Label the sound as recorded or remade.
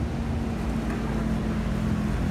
recorded